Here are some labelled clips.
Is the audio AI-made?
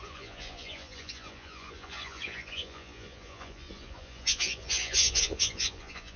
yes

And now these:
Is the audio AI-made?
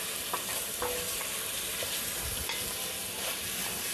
no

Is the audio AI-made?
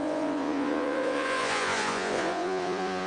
yes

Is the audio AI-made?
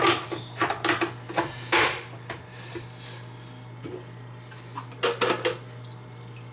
no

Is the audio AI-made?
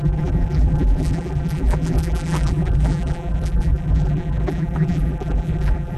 yes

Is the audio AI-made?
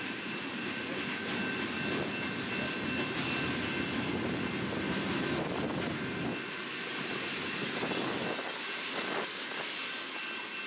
no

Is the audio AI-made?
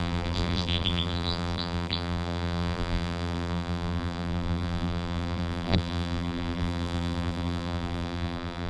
yes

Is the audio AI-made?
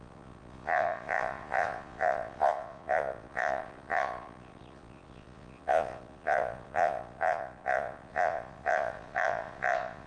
yes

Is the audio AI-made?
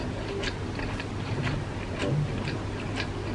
no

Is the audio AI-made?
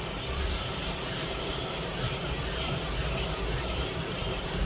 no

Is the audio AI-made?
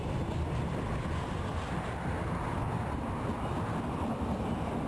no